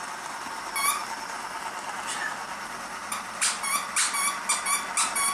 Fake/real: real